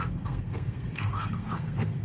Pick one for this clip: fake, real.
fake